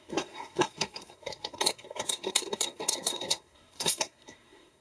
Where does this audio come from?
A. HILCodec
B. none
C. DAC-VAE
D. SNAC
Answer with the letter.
D